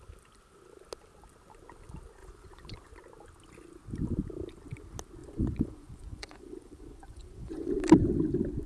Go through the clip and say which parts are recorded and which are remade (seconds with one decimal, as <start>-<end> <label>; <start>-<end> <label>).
0.0-2.2 recorded; 2.2-2.9 remade; 2.9-5.2 recorded; 5.2-7.7 remade; 7.7-8.7 recorded